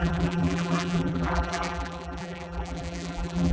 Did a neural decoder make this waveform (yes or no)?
yes